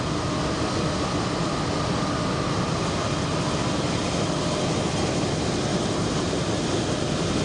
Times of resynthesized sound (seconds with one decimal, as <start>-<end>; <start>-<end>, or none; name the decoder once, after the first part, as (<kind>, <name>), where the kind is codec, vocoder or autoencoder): 5.7-6.6 (vocoder, BigVGAN v2)